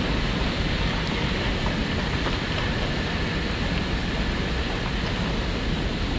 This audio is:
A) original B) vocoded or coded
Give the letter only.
A